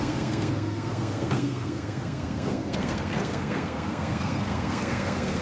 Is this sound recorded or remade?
remade